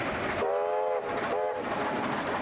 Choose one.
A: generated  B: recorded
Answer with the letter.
B